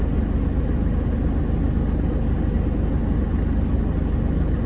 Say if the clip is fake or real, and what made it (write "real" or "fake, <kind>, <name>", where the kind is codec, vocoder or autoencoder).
real